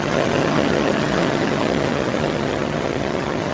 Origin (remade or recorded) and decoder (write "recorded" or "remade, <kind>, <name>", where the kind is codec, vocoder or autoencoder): remade, vocoder, HiFi-GAN